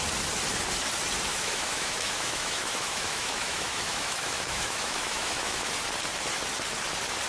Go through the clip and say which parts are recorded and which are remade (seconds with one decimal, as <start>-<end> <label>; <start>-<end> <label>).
0.0-1.3 recorded; 1.3-5.7 remade; 5.7-7.3 recorded